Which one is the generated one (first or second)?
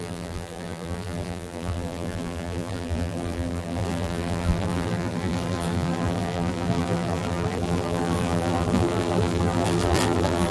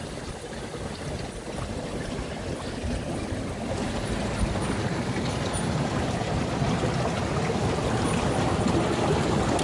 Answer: first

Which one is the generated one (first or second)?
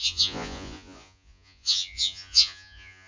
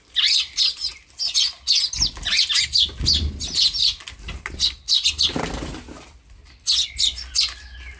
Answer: first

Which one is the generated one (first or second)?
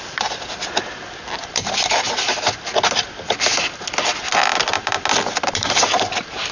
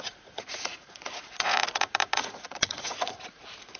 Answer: second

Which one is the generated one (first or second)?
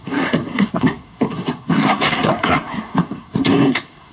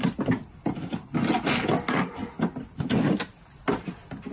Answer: first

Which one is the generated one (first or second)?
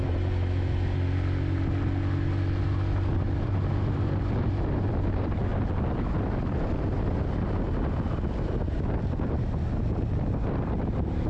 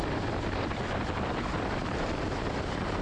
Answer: second